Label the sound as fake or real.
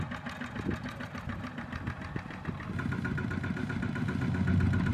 real